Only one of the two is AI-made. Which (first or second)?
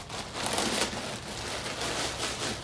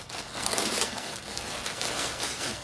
second